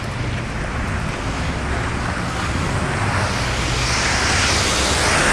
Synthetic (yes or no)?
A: no